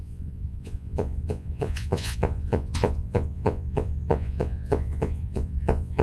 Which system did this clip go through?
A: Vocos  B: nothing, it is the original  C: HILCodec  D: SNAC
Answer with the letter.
A